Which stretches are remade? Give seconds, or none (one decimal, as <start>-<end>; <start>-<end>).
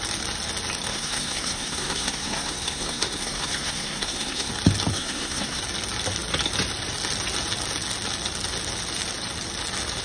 0.9-4.5; 4.9-5.6